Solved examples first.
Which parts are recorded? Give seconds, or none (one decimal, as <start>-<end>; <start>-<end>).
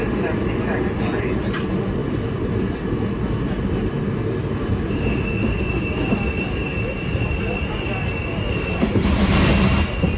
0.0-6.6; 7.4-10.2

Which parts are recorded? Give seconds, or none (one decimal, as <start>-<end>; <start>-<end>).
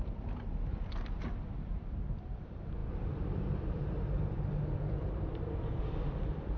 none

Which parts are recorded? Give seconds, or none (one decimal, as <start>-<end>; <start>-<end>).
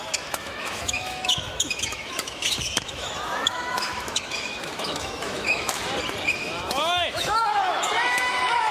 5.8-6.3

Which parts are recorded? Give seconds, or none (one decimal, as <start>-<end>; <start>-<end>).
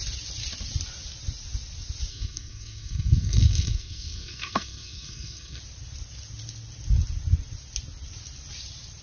0.0-2.1; 5.6-9.0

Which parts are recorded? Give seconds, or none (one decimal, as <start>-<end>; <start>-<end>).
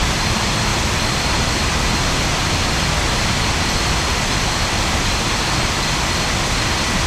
0.0-7.1